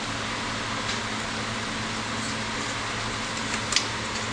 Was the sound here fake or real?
real